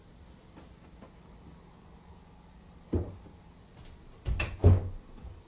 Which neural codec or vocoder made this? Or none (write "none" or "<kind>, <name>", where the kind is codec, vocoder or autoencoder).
none